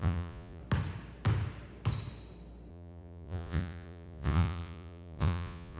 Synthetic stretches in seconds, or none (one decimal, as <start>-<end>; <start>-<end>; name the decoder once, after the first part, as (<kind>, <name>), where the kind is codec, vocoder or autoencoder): 0.0-0.6 (vocoder, Vocos); 2.7-5.8